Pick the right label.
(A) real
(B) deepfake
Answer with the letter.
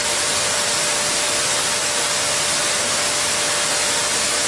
A